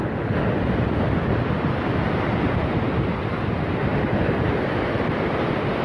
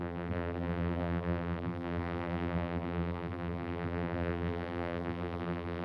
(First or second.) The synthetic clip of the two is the second